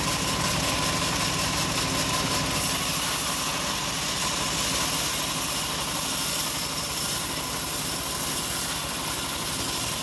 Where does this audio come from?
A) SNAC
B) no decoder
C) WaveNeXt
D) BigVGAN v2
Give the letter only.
B